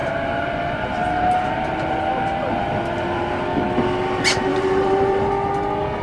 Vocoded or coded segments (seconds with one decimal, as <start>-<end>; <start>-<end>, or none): 4.5-5.3